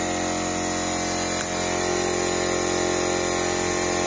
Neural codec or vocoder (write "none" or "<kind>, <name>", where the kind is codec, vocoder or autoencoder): none